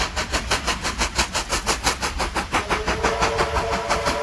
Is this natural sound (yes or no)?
yes